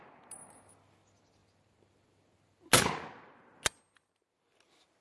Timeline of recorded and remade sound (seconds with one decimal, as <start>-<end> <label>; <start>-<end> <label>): 0.0-5.0 recorded